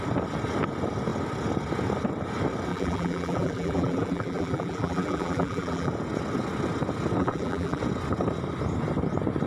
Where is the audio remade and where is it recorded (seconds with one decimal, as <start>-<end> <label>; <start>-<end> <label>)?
0.0-2.7 recorded; 2.7-5.9 remade; 5.9-7.2 recorded; 7.2-7.8 remade; 7.8-9.5 recorded